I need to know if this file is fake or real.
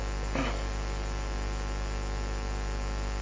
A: real